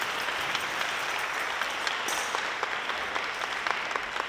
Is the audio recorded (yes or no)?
no